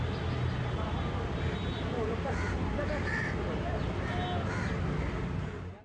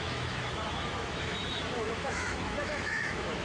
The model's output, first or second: second